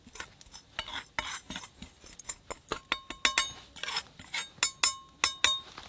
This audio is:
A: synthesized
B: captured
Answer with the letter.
B